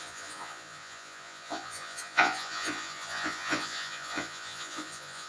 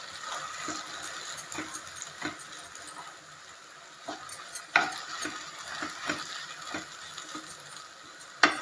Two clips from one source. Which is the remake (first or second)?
first